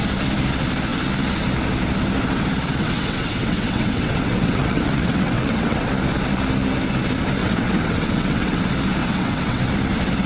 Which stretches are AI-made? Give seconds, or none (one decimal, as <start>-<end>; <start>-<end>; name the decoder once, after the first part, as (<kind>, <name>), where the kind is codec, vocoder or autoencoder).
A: 2.8-5.9 (vocoder, WaveNeXt); 7.4-8.6; 9.0-9.6